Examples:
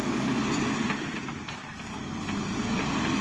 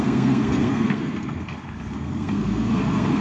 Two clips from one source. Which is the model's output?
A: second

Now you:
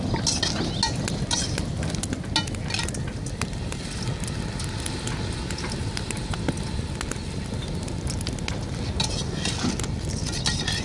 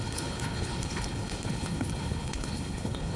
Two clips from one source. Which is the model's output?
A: second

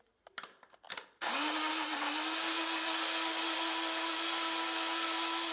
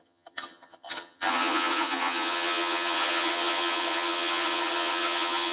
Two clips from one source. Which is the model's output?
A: second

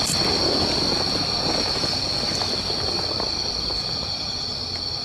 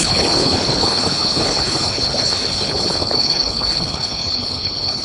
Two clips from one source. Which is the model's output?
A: second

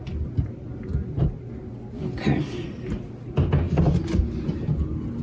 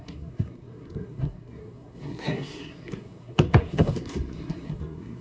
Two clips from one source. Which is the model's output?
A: second